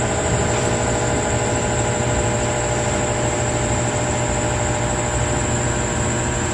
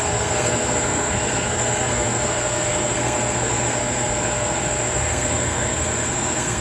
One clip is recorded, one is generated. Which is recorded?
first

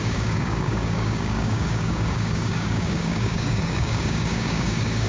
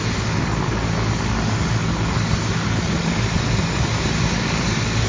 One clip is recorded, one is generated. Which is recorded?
second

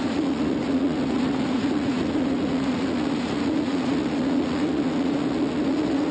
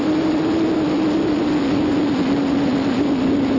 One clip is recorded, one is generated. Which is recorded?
second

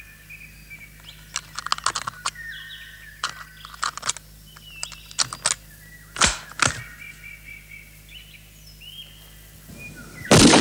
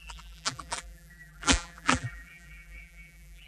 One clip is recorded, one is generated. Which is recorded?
first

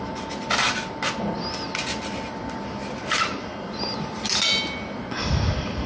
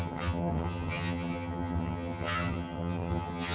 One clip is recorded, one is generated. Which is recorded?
first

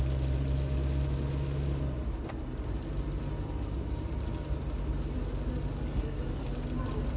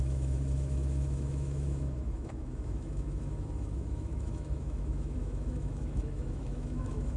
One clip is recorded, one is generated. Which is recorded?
first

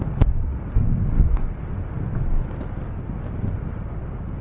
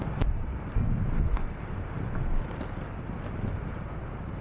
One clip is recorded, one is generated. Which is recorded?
first